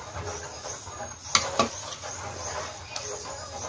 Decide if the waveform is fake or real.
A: real